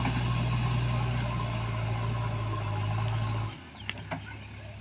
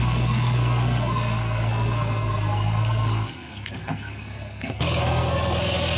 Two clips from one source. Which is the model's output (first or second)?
second